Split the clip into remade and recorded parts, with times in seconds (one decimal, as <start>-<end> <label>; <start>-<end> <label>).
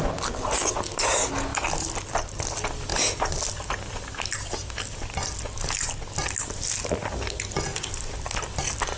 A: 0.0-9.0 recorded